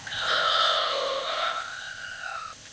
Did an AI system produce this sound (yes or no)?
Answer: yes